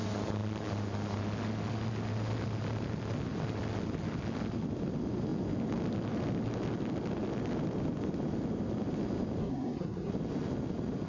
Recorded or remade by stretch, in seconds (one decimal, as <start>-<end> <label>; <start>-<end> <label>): 0.0-9.4 recorded; 9.4-10.1 remade; 10.1-11.1 recorded